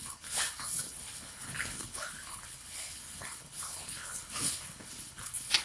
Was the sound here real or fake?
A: fake